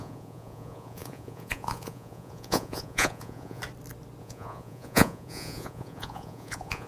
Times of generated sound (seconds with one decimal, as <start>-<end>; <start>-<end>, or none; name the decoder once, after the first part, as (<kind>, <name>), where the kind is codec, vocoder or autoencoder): 0.0-3.6 (vocoder, Vocos); 4.2-6.9